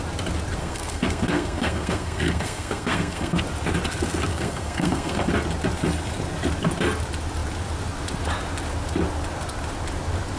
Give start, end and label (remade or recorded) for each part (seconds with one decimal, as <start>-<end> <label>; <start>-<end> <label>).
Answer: 0.0-0.6 recorded; 0.6-3.4 remade; 3.4-4.3 recorded; 4.3-5.3 remade; 5.3-10.4 recorded